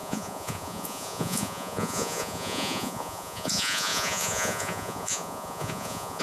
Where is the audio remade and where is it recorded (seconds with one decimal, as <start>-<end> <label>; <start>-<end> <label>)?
0.0-6.2 remade